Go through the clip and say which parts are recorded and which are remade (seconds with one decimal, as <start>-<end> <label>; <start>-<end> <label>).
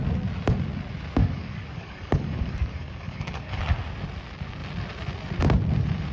0.0-1.2 recorded; 1.2-3.6 remade; 3.6-6.1 recorded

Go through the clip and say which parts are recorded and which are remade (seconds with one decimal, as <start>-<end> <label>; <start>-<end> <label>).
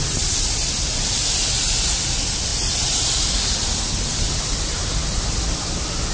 0.0-6.1 recorded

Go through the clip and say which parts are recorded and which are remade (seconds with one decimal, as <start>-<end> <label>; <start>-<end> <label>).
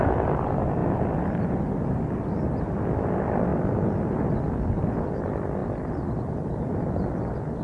0.0-7.6 recorded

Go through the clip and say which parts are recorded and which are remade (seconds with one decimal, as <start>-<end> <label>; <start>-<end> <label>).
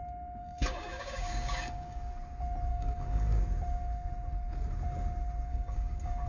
0.0-0.4 recorded; 0.4-2.1 remade; 2.1-2.7 recorded; 2.7-3.4 remade; 3.4-5.5 recorded; 5.5-6.3 remade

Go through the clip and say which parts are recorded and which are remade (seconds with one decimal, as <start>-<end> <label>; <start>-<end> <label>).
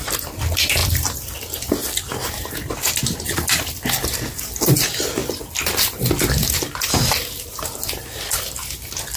0.0-9.2 recorded